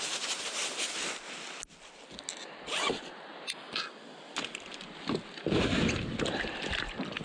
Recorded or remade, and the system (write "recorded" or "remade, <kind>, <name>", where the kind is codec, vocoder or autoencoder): recorded